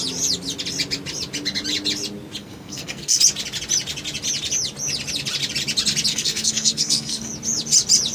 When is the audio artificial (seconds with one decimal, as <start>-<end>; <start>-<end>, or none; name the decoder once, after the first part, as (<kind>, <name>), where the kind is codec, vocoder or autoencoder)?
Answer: 2.4-3.2 (codec, SNAC); 6.1-7.3